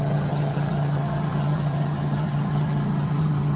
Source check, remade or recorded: remade